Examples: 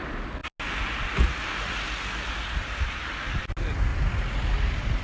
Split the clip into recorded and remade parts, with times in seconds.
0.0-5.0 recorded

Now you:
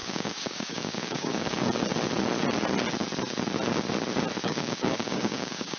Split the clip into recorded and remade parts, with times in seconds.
0.0-1.6 remade; 1.6-4.4 recorded; 4.4-5.8 remade